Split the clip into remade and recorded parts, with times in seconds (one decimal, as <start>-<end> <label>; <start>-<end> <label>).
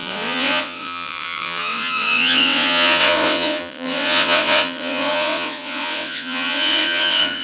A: 0.0-7.4 remade